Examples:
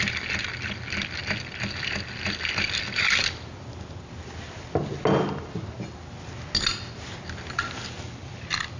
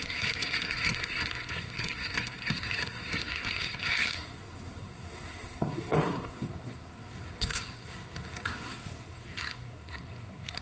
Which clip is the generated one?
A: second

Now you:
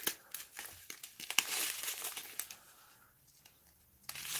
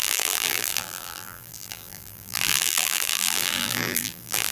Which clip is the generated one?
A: second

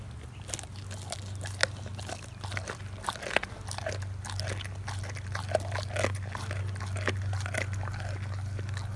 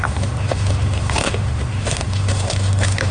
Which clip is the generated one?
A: second